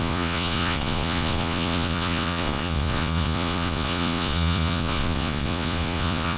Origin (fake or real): fake